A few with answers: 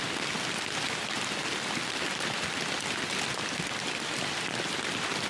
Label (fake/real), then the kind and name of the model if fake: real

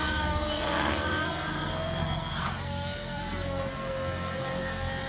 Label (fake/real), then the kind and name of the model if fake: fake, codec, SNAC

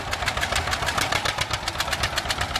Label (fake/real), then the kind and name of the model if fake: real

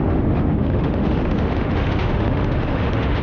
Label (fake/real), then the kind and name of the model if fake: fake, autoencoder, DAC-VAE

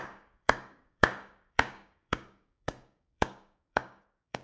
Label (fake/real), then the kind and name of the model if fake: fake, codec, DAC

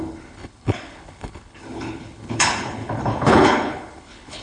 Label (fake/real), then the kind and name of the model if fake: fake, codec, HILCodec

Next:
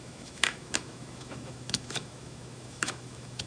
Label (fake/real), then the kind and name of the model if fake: fake, autoencoder, DAC-VAE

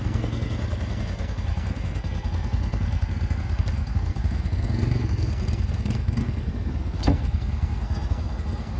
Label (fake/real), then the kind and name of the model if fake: fake, codec, SNAC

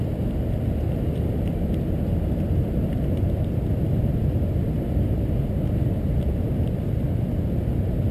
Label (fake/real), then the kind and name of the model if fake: real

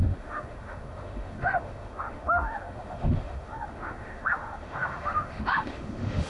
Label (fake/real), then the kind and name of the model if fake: fake, autoencoder, DAC-VAE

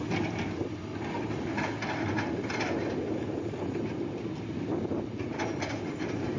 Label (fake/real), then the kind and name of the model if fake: real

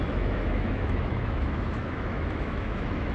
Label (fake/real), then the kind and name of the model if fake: fake, autoencoder, DAC-VAE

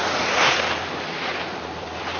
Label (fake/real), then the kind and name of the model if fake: fake, vocoder, BigVGAN v2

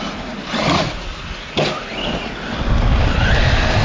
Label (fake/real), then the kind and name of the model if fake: real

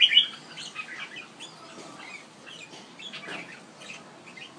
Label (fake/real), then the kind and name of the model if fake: real